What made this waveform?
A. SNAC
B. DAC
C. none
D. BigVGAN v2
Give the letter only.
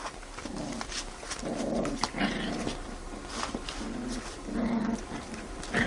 C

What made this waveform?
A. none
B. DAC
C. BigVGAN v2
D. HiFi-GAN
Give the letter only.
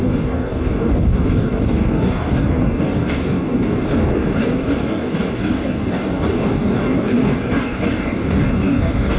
B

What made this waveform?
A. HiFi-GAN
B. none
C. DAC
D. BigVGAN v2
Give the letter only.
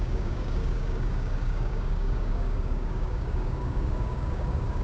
C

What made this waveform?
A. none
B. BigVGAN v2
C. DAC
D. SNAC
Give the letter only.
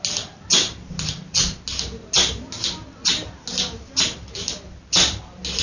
A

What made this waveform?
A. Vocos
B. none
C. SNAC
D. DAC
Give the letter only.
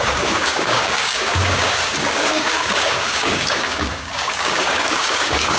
D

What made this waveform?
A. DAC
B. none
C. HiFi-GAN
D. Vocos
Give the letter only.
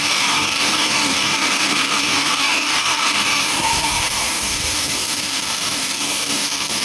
A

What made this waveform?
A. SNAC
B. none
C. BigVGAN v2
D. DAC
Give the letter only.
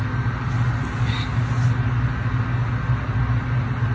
B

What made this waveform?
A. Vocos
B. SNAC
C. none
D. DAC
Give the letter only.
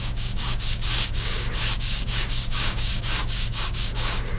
D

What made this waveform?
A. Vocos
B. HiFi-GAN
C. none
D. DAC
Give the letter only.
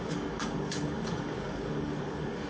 D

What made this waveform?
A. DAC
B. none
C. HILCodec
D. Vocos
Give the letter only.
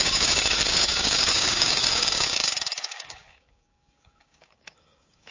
A